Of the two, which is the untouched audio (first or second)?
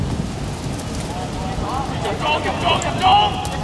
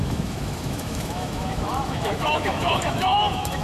first